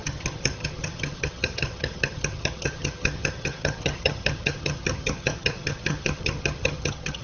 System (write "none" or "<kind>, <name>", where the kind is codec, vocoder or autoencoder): vocoder, HiFi-GAN